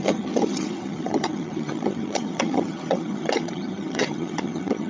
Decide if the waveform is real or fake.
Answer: fake